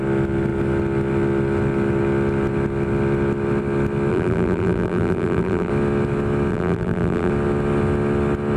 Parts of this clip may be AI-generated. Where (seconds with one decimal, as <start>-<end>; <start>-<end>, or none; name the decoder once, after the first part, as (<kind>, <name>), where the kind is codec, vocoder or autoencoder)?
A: 4.1-5.7 (vocoder, BigVGAN v2); 6.5-7.3